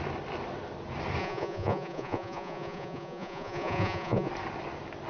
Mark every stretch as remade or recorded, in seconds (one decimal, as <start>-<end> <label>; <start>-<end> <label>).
0.0-1.2 recorded; 1.2-4.3 remade; 4.3-5.1 recorded